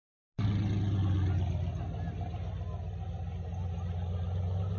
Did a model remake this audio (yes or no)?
no